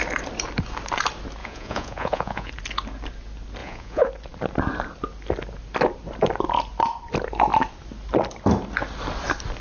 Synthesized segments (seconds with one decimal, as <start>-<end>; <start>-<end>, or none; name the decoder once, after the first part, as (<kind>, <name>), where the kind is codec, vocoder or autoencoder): 1.4-2.5 (vocoder, Vocos); 3.6-4.1